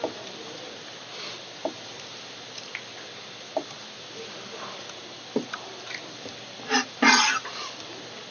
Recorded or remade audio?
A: recorded